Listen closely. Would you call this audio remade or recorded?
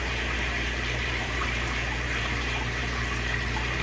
remade